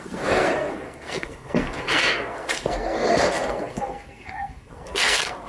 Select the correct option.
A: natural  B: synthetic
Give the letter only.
B